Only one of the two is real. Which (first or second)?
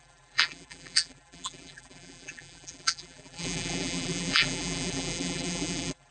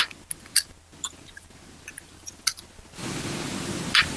second